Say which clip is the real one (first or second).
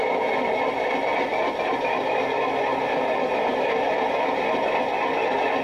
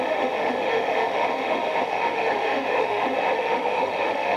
first